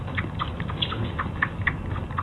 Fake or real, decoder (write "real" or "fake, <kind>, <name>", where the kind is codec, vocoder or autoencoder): real